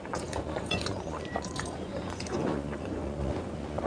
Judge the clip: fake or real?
fake